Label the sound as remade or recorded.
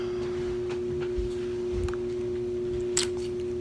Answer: recorded